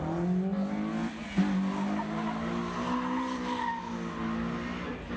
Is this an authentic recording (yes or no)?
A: yes